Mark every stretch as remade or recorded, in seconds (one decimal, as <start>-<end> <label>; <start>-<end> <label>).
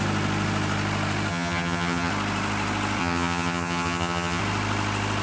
0.0-1.3 recorded; 1.3-2.1 remade; 2.1-3.0 recorded; 3.0-4.4 remade; 4.4-5.2 recorded